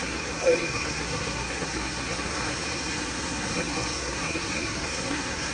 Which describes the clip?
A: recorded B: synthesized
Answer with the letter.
B